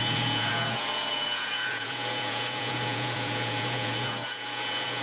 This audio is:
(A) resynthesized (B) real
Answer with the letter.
A